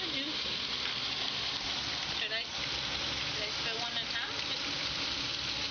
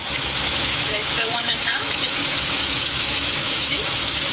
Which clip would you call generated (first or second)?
second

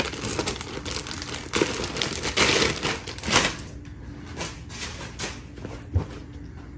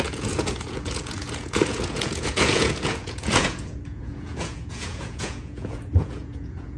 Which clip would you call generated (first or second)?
second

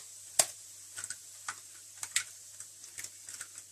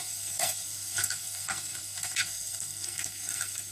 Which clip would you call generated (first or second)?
second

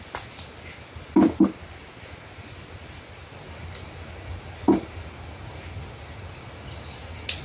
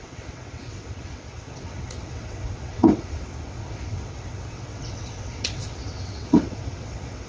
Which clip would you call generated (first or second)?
second